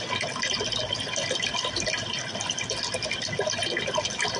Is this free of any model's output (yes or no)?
yes